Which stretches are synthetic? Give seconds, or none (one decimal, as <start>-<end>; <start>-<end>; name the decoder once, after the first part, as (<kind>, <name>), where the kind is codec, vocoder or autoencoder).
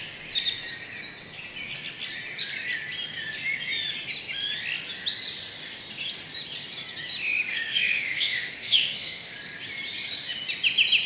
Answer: 7.5-9.3 (autoencoder, DAC-VAE)